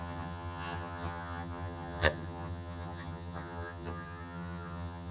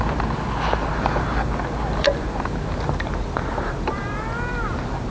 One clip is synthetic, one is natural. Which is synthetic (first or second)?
first